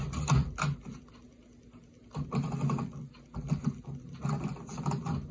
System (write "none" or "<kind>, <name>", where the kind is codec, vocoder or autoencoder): none